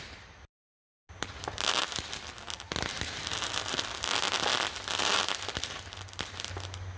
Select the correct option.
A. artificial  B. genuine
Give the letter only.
B